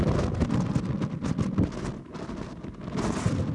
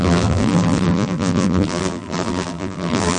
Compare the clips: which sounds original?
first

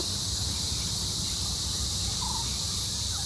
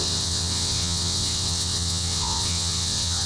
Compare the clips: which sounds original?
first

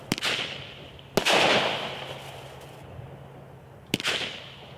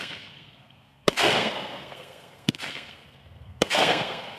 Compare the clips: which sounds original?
first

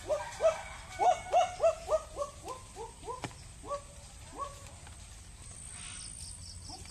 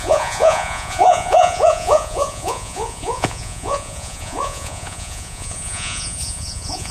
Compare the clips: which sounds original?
first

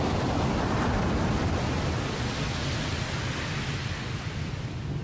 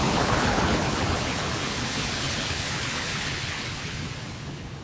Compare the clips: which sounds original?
first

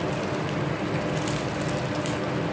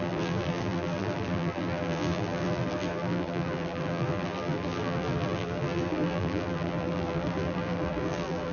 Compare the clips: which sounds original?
first